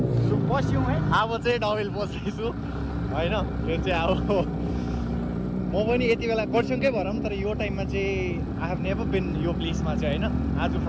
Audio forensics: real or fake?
real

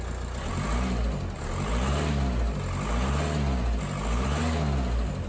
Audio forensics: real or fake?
real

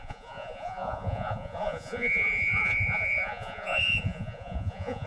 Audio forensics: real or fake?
fake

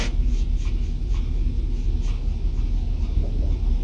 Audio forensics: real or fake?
real